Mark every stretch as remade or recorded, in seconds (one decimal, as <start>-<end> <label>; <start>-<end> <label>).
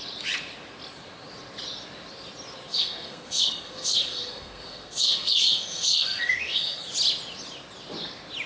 0.0-2.7 recorded; 2.7-6.9 remade; 6.9-8.5 recorded